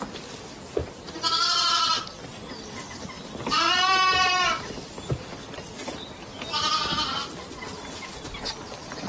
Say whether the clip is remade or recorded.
recorded